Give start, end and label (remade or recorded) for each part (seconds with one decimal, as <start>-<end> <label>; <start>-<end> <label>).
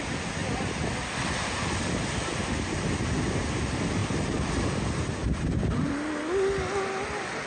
0.0-4.0 recorded; 4.0-4.5 remade; 4.5-5.2 recorded; 5.2-5.9 remade; 5.9-7.5 recorded